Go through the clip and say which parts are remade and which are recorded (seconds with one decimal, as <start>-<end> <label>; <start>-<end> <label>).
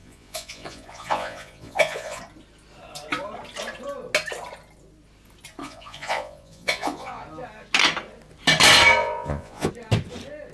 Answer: 0.0-2.2 remade; 2.2-5.6 recorded; 5.6-7.2 remade; 7.2-9.0 recorded; 9.0-9.7 remade; 9.7-10.5 recorded